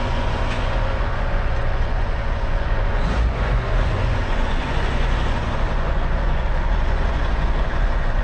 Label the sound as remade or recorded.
remade